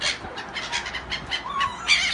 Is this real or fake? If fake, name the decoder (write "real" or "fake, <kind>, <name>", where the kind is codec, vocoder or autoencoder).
real